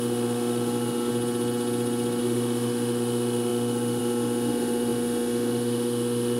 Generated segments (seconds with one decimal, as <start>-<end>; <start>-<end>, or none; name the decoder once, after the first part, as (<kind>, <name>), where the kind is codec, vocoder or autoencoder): 0.0-1.1 (autoencoder, DAC-VAE); 2.2-6.4